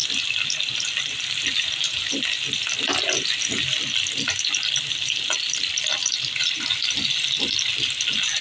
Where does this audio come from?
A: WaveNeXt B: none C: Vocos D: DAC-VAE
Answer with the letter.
B